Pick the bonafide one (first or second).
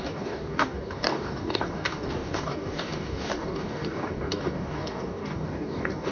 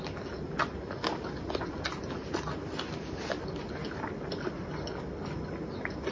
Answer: second